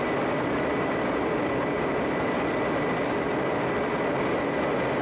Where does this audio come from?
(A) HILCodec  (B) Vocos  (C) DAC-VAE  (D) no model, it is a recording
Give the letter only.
D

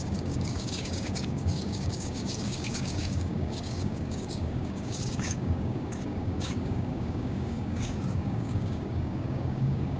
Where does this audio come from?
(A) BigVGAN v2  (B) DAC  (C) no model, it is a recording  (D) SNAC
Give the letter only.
B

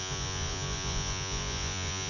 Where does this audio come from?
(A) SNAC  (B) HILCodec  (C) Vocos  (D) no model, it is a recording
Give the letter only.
C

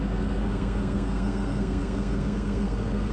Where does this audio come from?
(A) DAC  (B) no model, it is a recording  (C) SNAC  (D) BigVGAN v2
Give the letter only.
C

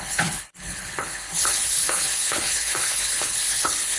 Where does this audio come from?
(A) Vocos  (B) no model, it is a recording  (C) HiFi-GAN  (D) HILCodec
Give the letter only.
D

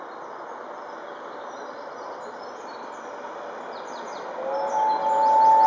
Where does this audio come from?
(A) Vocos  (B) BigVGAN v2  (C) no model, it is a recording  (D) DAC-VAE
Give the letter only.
C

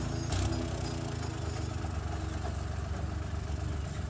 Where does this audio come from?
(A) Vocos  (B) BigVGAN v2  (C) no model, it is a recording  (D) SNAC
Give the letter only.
C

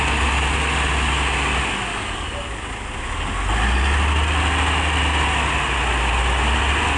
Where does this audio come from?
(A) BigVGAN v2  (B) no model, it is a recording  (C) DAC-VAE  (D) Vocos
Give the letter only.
B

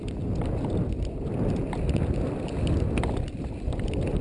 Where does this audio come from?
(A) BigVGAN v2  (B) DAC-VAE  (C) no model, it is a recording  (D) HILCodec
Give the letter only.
C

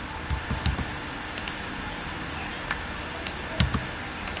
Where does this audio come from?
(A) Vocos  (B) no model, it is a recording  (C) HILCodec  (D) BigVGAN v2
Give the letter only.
B